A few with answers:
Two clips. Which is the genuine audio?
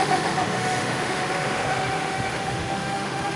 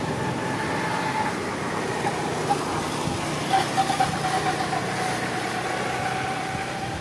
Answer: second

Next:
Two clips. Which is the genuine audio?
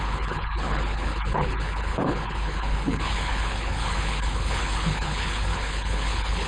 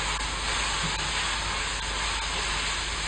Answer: second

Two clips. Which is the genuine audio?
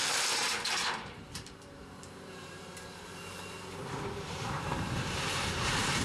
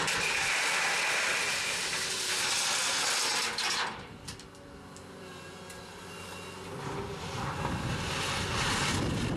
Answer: second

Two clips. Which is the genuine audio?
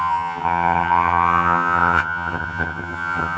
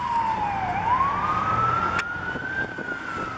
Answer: second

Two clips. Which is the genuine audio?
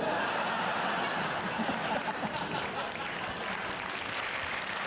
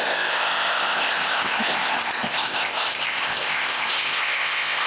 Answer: first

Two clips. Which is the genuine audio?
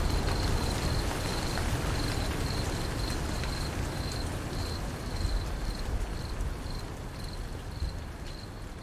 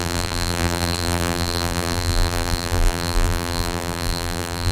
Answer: first